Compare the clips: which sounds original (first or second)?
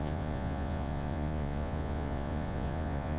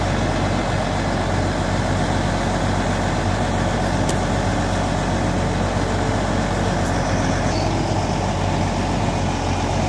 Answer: second